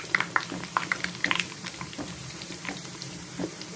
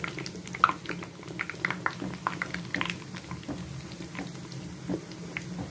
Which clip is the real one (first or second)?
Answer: second